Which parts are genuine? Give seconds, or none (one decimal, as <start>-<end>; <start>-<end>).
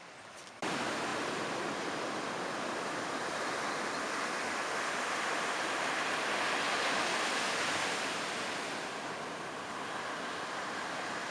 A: 0.0-1.1; 5.9-11.3